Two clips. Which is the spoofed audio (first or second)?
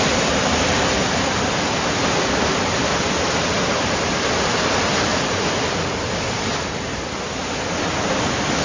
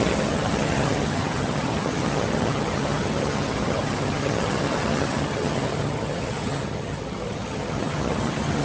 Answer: second